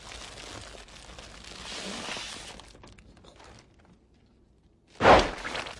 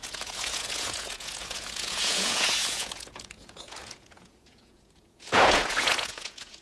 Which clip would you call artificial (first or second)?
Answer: second